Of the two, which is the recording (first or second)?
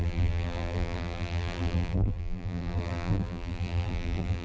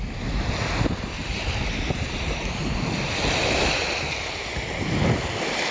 second